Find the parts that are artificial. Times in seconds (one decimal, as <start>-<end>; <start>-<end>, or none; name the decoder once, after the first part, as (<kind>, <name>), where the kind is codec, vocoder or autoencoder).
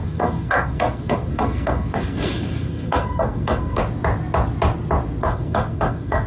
0.0-3.8 (codec, SNAC); 5.2-6.3